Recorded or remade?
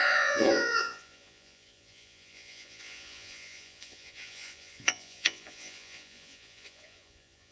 remade